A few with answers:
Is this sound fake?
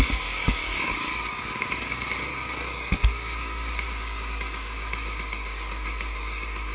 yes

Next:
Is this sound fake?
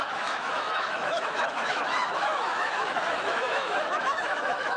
yes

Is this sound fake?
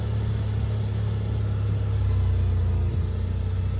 no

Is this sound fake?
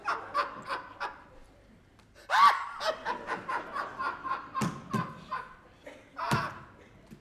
no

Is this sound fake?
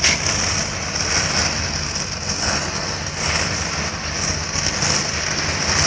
no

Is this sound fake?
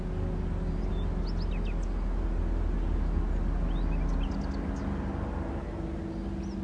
no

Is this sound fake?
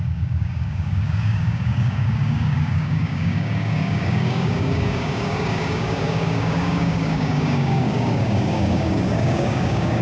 yes